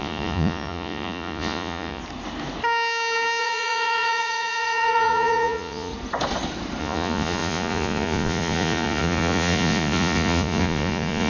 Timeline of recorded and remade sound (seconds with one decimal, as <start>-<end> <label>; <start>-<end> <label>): 0.0-2.0 remade; 2.0-3.4 recorded; 3.4-5.9 remade; 5.9-6.8 recorded; 6.8-11.3 remade